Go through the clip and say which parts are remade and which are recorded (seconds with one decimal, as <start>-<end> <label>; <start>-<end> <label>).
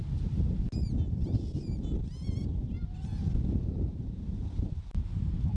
0.0-3.4 recorded; 3.4-5.6 remade